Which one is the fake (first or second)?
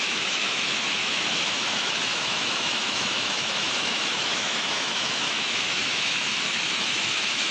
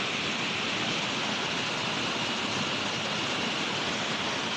first